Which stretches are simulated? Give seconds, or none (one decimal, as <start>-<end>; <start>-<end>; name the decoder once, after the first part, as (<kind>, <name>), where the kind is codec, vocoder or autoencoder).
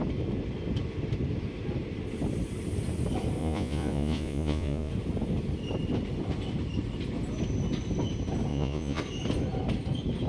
3.4-4.9 (vocoder, Vocos); 8.5-9.0